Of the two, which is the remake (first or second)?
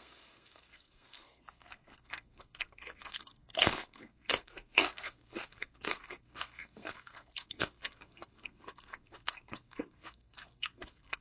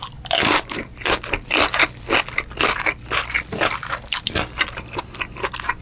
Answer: first